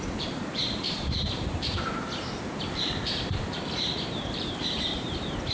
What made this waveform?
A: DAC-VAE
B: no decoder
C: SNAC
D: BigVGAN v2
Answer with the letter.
D